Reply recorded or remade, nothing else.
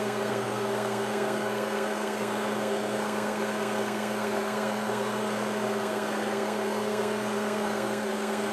remade